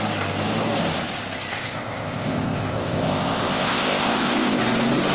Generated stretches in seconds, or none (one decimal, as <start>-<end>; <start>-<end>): 1.5-4.6

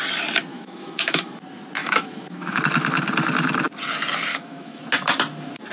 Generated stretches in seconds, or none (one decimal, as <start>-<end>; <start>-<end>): 0.5-1.3; 1.8-2.6; 4.3-4.8

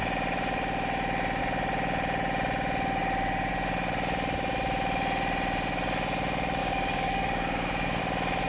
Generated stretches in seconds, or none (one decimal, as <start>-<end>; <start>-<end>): 6.6-8.0

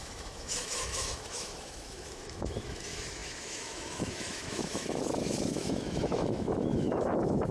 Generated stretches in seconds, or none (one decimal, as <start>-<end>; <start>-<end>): 0.0-7.5

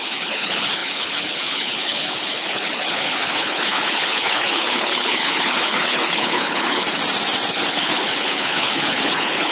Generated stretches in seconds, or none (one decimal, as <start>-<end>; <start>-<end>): 0.0-7.0; 7.5-9.5

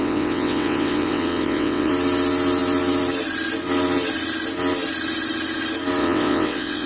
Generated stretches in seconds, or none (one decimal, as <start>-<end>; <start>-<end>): 0.0-1.9; 6.0-6.9